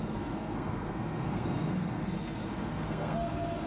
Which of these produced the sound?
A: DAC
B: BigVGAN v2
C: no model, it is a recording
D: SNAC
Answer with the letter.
D